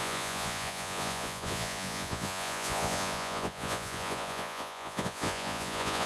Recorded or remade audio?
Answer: remade